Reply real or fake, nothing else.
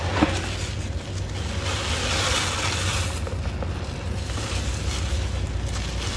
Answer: real